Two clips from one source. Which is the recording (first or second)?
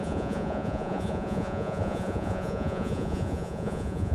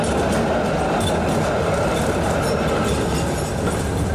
second